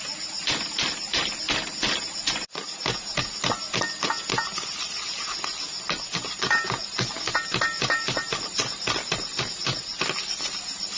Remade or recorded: recorded